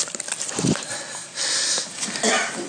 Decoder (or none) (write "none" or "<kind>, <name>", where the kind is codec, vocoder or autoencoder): none